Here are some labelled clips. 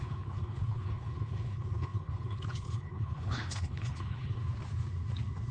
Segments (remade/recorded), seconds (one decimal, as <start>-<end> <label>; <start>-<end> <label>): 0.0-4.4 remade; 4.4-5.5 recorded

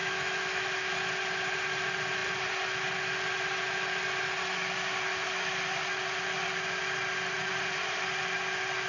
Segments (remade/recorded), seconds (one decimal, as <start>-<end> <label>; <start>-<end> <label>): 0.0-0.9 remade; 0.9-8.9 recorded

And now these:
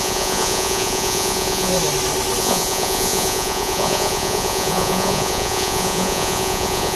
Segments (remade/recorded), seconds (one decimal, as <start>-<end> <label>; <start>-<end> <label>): 0.0-1.7 remade; 1.7-2.4 recorded; 2.4-7.0 remade

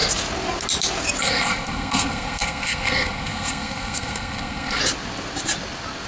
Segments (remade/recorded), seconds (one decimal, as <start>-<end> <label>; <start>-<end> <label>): 0.0-1.2 recorded; 1.2-4.8 remade; 4.8-6.1 recorded

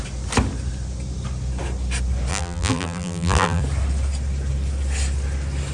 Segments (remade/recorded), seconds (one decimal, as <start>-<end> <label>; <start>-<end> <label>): 0.0-2.3 recorded; 2.3-3.6 remade; 3.6-5.7 recorded

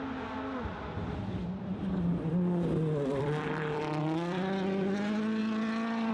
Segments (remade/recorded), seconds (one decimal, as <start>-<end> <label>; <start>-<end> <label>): 0.0-1.4 recorded; 1.4-2.3 remade; 2.3-3.1 recorded; 3.1-4.0 remade; 4.0-5.4 recorded; 5.4-6.1 remade